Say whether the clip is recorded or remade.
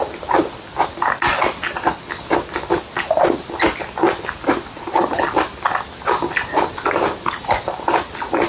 recorded